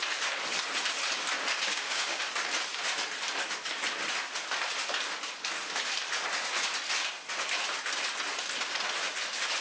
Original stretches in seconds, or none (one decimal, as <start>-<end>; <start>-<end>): 0.0-1.5; 2.2-9.6